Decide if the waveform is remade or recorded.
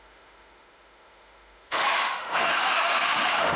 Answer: remade